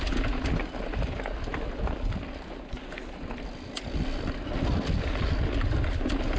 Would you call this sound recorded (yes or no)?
yes